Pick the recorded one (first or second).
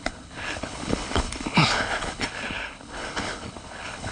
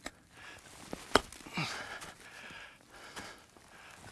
second